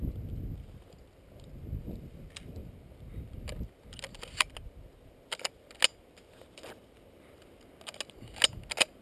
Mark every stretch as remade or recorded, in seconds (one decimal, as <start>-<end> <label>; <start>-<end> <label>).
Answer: 0.0-2.6 recorded; 2.6-3.4 remade; 3.4-9.0 recorded